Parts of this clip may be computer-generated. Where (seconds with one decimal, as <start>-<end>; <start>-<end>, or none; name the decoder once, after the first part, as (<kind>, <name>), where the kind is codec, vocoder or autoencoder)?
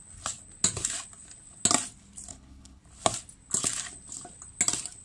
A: 2.3-2.8 (codec, HILCodec)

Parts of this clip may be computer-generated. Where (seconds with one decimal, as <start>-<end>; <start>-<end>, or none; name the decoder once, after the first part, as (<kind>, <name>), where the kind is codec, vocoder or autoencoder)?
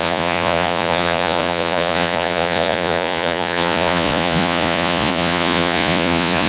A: 0.0-6.5 (vocoder, Vocos)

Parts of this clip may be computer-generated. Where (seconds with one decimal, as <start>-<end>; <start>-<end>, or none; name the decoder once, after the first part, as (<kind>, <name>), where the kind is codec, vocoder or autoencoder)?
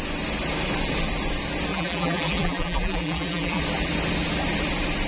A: 1.7-3.6 (vocoder, BigVGAN v2)